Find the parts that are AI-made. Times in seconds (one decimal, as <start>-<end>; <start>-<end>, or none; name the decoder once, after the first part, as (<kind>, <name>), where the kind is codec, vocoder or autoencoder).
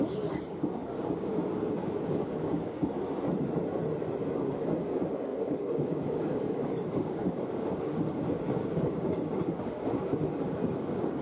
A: 0.0-2.8 (codec, DAC); 4.3-11.2